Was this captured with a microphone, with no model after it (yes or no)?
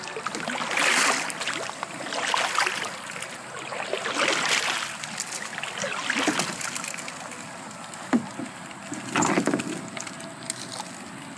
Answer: yes